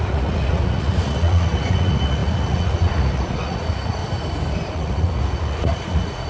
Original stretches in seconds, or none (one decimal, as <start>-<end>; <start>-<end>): 4.0-4.7